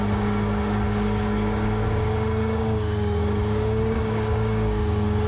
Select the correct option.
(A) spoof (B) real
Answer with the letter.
A